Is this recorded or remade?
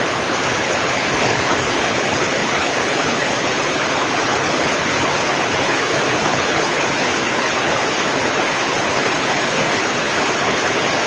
remade